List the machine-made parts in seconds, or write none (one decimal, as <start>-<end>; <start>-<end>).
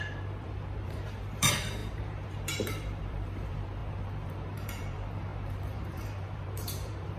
0.0-7.2